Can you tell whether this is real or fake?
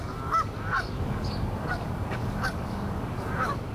fake